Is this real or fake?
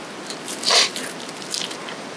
real